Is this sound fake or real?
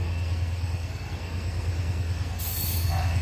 fake